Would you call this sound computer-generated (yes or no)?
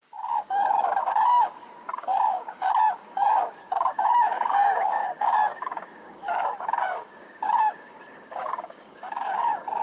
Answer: yes